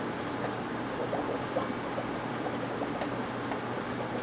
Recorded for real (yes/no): yes